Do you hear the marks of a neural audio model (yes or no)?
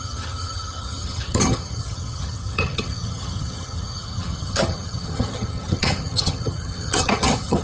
yes